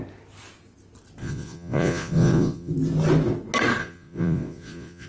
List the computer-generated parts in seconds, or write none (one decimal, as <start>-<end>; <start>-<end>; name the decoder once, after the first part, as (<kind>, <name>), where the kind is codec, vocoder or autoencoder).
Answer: 1.2-2.7 (vocoder, Vocos); 3.8-5.1